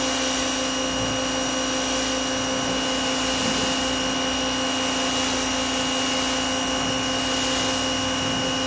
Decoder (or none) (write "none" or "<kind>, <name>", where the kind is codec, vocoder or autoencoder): none